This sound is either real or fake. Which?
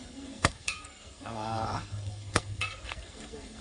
fake